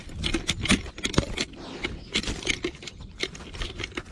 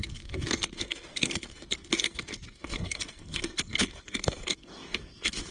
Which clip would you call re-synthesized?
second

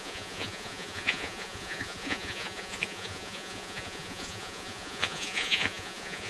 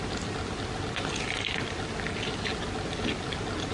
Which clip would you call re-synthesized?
first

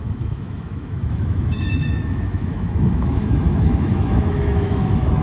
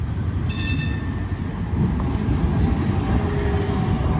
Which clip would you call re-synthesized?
first